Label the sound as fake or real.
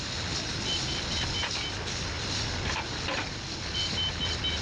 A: real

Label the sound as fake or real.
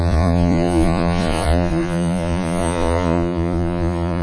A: fake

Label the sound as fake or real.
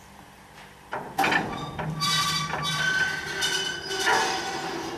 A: fake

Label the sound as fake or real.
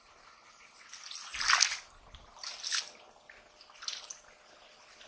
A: real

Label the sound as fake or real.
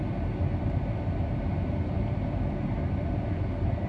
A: real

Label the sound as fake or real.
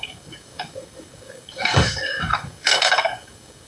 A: fake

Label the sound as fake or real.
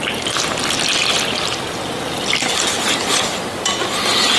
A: real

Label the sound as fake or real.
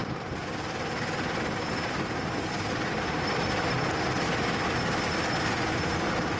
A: fake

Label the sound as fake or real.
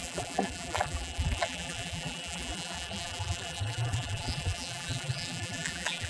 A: fake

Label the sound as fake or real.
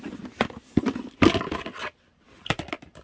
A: real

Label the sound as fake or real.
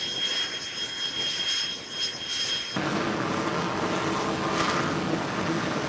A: real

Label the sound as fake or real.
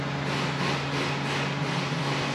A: real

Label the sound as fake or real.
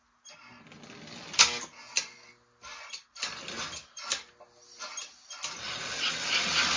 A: real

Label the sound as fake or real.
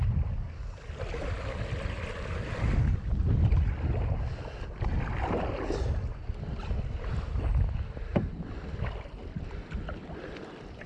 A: real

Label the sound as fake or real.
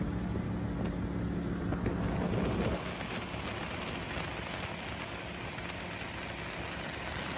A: real